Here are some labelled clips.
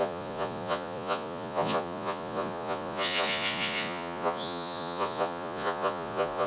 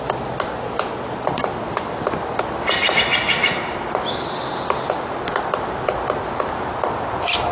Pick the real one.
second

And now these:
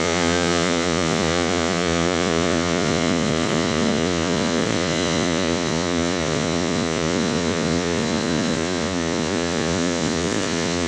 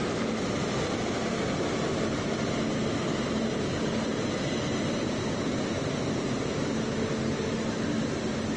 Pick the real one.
second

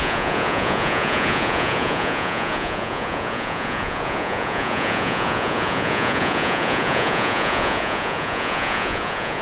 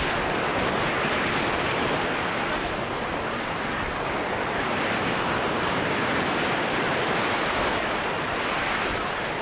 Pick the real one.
second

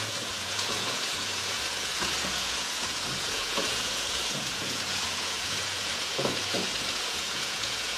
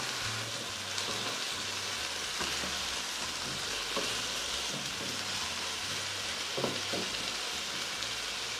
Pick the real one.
second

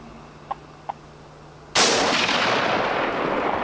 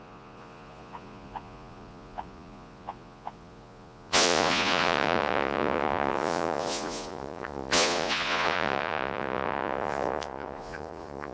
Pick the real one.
first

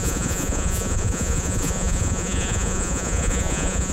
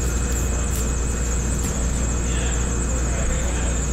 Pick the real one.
second